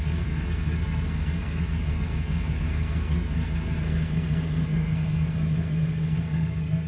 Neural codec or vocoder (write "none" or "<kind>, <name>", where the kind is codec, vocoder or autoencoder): codec, SNAC